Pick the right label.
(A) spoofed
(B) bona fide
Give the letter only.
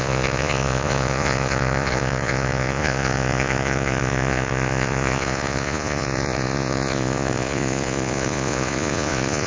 A